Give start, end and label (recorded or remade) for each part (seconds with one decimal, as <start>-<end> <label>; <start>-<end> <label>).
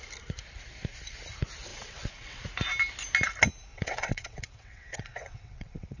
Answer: 0.0-1.7 recorded; 1.7-2.4 remade; 2.4-3.7 recorded; 3.7-6.0 remade